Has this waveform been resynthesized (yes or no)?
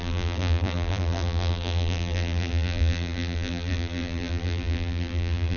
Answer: yes